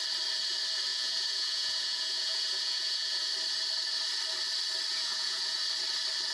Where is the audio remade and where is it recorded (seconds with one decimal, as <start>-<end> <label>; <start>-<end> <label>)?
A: 0.0-0.9 recorded; 0.9-3.3 remade; 3.3-4.9 recorded; 4.9-5.6 remade; 5.6-6.3 recorded